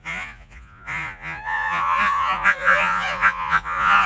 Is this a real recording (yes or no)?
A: no